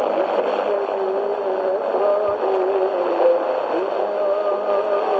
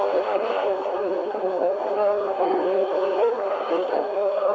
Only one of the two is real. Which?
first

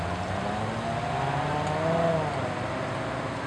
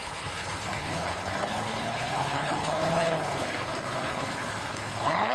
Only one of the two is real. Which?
first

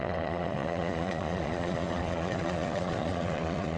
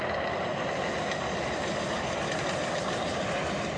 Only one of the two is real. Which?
second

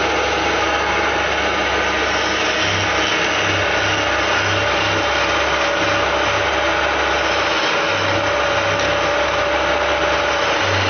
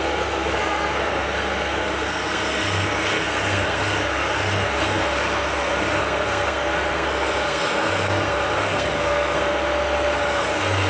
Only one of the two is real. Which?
first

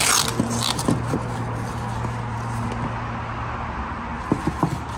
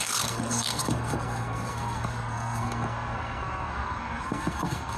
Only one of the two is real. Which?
first